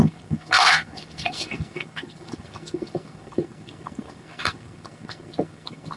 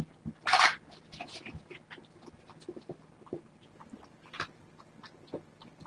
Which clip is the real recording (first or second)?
second